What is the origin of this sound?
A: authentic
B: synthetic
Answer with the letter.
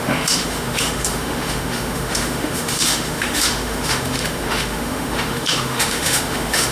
B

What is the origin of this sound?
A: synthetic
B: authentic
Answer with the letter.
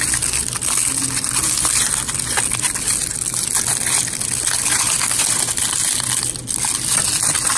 B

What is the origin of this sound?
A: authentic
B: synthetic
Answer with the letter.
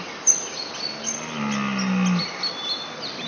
A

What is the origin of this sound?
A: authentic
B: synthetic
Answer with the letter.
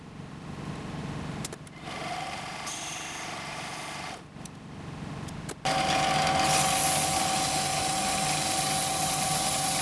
A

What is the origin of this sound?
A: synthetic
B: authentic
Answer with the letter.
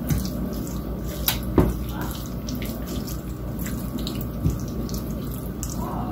B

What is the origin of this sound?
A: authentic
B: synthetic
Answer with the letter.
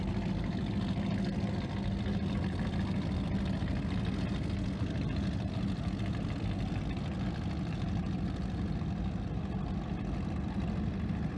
A